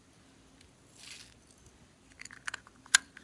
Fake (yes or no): no